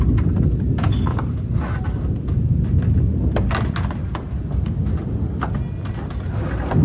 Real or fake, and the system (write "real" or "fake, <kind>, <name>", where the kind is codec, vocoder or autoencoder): real